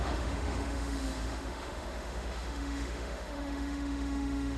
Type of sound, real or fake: fake